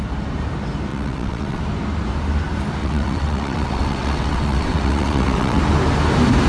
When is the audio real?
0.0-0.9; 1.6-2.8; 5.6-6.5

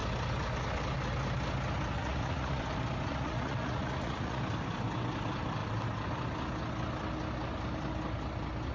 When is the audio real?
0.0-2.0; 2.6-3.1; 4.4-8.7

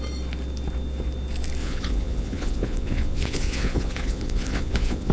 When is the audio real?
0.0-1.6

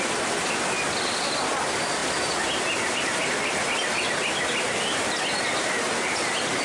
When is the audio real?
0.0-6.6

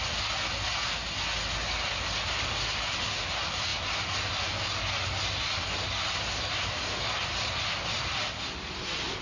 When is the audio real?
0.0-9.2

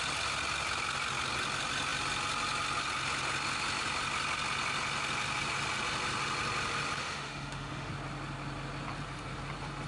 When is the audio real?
0.0-7.0; 7.9-9.9

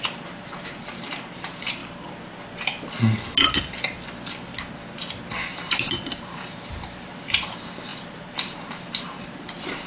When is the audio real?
1.8-5.4

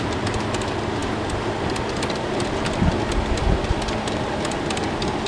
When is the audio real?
0.0-5.3